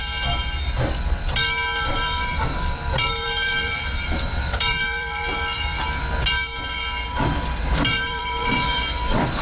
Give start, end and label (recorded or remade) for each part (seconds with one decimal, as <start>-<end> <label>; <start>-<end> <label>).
0.0-1.9 recorded; 1.9-5.7 remade; 5.7-7.6 recorded; 7.6-9.4 remade